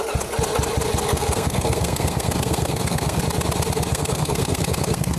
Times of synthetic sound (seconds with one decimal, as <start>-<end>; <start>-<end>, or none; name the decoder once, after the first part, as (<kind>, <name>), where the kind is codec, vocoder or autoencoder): 1.1-3.2 (codec, SNAC); 3.9-5.2